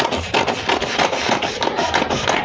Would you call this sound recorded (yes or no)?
yes